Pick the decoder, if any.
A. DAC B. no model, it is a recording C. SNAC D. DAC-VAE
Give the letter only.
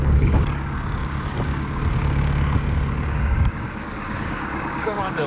A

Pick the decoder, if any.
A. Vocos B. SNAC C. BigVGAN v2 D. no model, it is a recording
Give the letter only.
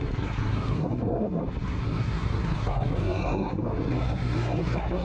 B